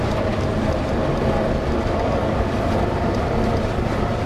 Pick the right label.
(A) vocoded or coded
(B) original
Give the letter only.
A